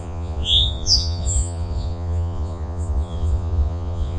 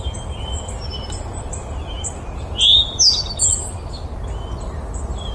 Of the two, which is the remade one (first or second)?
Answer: first